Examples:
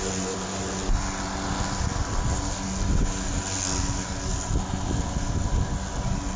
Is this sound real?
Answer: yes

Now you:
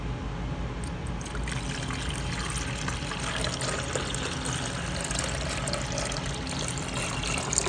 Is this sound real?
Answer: yes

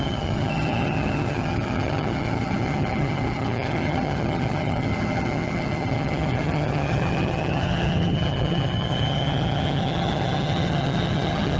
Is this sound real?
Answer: no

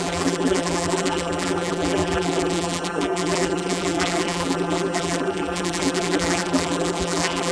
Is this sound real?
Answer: no